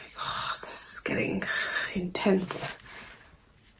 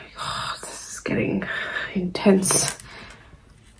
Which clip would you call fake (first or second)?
first